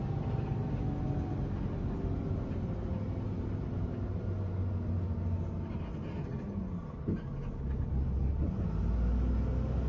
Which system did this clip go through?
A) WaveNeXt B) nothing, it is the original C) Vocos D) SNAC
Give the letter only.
B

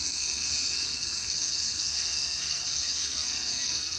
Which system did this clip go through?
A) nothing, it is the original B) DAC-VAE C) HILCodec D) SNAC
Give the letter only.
D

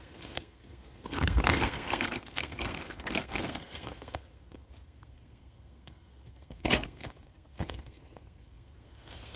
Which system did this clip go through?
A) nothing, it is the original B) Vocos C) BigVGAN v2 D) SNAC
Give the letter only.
D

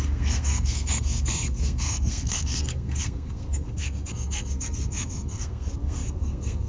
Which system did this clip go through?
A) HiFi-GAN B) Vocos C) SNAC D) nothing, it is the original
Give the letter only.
C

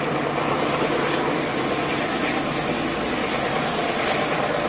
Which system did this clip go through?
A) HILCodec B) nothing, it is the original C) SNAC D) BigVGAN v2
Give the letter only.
B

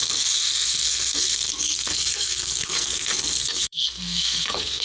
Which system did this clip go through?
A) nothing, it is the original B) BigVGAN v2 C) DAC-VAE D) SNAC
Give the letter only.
D